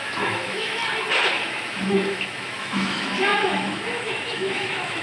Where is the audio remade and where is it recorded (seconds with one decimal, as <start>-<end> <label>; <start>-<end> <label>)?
0.0-0.8 remade; 0.8-1.3 recorded; 1.3-5.0 remade